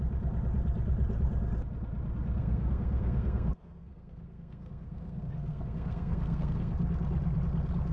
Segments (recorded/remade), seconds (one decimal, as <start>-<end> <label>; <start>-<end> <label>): 0.0-2.4 recorded; 2.4-6.7 remade; 6.7-7.9 recorded